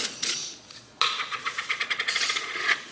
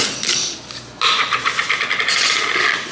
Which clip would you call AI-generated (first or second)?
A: first